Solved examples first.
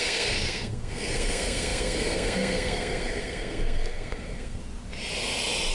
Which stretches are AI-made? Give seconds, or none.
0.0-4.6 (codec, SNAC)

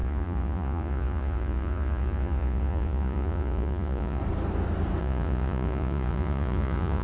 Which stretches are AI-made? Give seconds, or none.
0.0-4.2 (vocoder, Vocos); 5.0-7.0

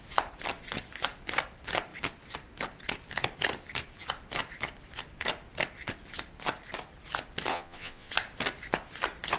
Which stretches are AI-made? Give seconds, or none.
7.5-8.1 (vocoder, Vocos)

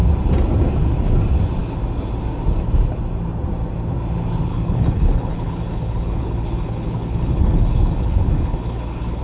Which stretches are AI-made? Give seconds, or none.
4.5-9.2 (codec, HILCodec)

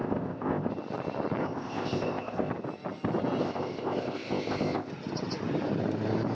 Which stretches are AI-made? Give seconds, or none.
0.0-0.7 (codec, ZipCodec); 1.4-2.5; 3.4-4.9

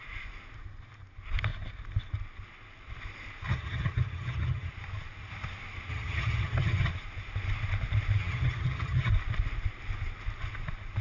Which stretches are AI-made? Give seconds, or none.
3.5-4.7 (vocoder, HiFi-GAN); 5.9-6.9; 8.2-9.1

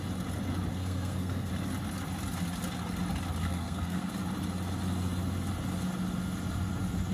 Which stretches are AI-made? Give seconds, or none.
0.7-1.5 (codec, SNAC); 3.4-4.1

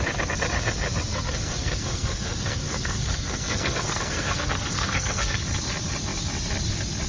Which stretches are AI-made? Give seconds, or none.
1.1-5.4 (codec, SNAC)